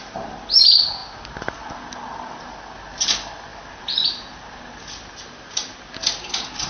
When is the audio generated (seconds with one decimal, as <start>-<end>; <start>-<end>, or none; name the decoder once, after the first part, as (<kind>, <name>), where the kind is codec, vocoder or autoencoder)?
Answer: none